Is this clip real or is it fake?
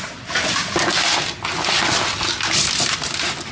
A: real